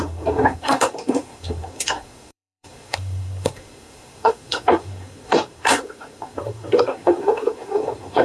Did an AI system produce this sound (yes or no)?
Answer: yes